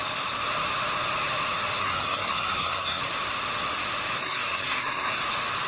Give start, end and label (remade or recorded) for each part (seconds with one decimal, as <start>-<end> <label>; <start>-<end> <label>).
0.0-1.8 recorded; 1.8-3.0 remade; 3.0-4.2 recorded; 4.2-5.2 remade; 5.2-5.7 recorded